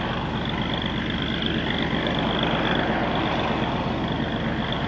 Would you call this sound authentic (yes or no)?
yes